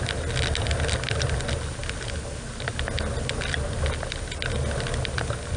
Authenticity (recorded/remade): recorded